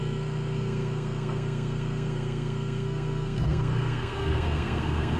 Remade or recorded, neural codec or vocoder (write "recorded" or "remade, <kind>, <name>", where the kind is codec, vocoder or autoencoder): remade, codec, SNAC